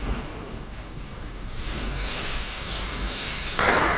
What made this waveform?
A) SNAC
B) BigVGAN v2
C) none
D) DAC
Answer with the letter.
D